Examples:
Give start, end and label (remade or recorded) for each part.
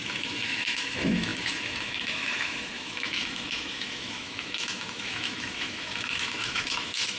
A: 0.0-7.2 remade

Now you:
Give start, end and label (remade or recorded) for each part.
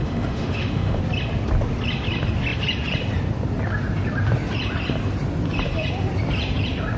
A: 0.0-1.0 remade; 1.0-7.0 recorded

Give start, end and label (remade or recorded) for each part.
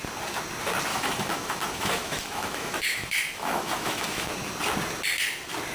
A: 0.0-0.9 recorded; 0.9-4.3 remade; 4.3-5.7 recorded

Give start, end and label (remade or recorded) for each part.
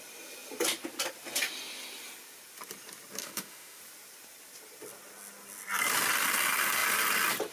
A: 0.0-3.2 recorded; 3.2-3.8 remade; 3.8-7.5 recorded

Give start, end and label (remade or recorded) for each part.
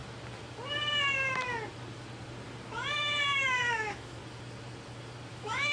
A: 0.0-3.4 recorded; 3.4-4.2 remade; 4.2-5.3 recorded; 5.3-5.7 remade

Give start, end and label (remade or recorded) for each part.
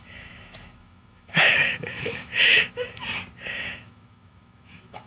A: 0.0-3.0 remade; 3.0-3.5 recorded; 3.5-5.1 remade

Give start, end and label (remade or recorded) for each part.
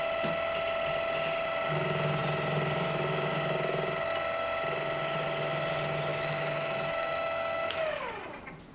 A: 0.0-6.1 recorded; 6.1-7.8 remade; 7.8-8.7 recorded